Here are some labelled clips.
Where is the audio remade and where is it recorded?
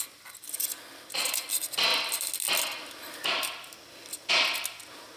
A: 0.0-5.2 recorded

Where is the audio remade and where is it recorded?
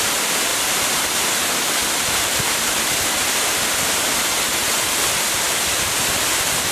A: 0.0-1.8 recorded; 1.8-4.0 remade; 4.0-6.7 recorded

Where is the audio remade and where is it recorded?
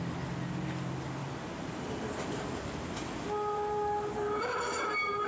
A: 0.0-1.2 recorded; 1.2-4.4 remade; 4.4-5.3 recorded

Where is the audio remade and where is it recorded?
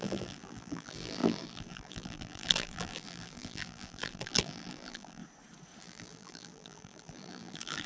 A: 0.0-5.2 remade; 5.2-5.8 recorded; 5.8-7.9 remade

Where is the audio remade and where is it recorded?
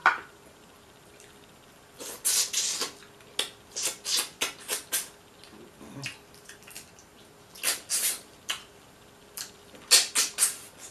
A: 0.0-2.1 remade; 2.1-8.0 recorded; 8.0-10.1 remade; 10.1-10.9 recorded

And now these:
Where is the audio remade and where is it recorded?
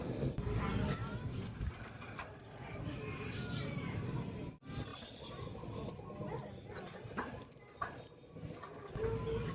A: 0.0-1.0 recorded; 1.0-2.8 remade; 2.8-4.9 recorded; 4.9-6.7 remade; 6.7-9.5 recorded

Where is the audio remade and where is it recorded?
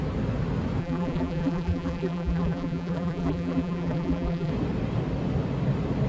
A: 0.0-0.8 recorded; 0.8-4.5 remade; 4.5-6.1 recorded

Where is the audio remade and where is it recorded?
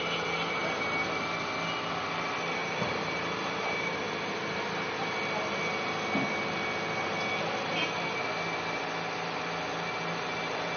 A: 0.0-2.6 recorded; 2.6-4.0 remade; 4.0-10.8 recorded